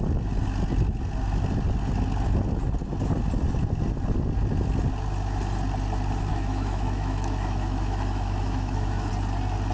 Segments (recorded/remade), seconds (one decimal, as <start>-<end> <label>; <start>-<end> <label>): 0.0-6.3 recorded; 6.3-9.1 remade; 9.1-9.7 recorded